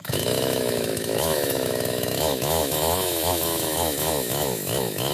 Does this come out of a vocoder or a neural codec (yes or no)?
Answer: yes